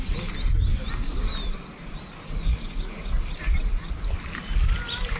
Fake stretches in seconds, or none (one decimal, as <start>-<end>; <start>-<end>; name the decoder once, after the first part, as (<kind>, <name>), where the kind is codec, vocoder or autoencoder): none